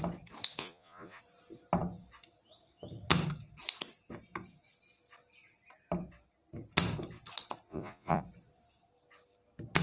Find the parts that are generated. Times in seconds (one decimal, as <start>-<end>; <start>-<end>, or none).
0.6-1.2; 7.7-8.2